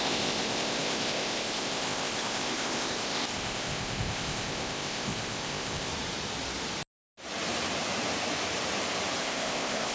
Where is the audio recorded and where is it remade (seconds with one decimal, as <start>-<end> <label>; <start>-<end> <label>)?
0.0-5.9 remade; 5.9-9.2 recorded; 9.2-9.9 remade